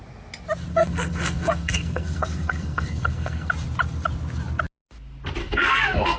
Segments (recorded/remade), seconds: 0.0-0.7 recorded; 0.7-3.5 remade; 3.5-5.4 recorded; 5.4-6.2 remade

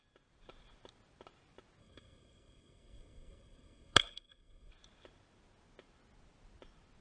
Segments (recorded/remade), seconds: 0.0-1.8 recorded; 1.8-4.7 remade; 4.7-7.0 recorded